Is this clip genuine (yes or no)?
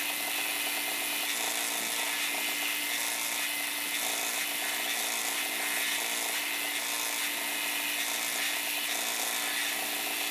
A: yes